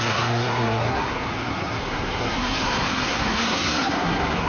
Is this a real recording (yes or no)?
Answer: no